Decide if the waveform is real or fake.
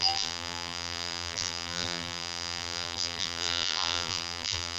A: fake